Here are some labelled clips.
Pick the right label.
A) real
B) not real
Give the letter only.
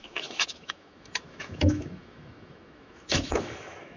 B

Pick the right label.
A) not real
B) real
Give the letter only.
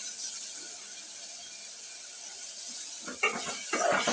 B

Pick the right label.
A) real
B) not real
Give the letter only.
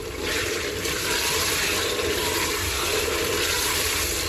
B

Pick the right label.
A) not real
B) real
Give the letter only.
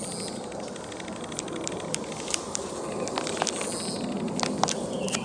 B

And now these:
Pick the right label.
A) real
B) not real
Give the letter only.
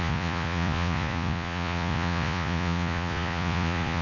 B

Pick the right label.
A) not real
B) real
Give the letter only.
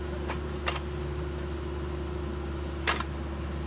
B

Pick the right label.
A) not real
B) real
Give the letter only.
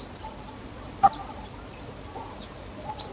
B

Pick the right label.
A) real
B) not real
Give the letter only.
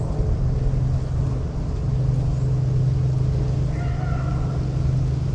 A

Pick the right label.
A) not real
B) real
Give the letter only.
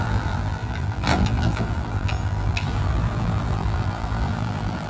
A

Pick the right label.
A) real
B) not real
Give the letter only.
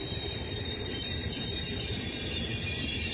B